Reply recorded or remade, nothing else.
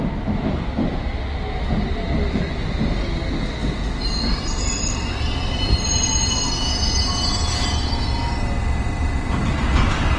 recorded